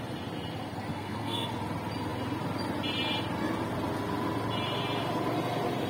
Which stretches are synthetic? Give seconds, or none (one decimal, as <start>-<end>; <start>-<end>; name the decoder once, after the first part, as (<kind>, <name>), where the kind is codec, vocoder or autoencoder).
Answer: 0.9-1.5 (codec, SNAC)